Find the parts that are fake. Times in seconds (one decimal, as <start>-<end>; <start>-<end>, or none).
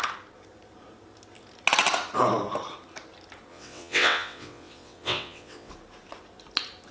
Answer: 3.5-5.7